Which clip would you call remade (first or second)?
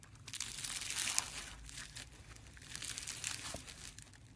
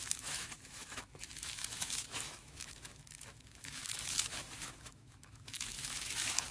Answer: second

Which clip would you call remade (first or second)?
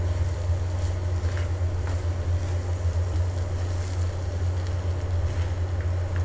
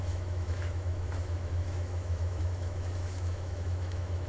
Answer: second